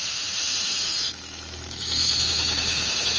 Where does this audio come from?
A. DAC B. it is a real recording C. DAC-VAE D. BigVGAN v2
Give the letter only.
C